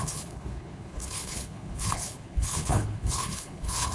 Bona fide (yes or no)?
no